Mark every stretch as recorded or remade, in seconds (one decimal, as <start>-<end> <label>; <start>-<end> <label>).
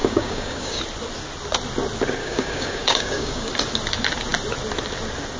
0.0-0.8 remade; 0.8-2.2 recorded; 2.2-3.5 remade; 3.5-5.4 recorded